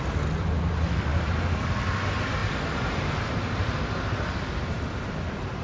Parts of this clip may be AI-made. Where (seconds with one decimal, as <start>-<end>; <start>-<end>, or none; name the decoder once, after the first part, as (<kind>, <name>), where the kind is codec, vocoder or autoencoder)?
1.1-1.7 (vocoder, BigVGAN v2); 2.4-3.8